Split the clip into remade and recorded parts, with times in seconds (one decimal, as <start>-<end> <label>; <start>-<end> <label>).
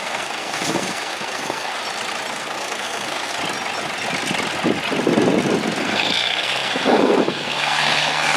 0.0-1.8 remade; 1.8-2.3 recorded; 2.3-3.4 remade; 3.4-5.8 recorded; 5.8-8.4 remade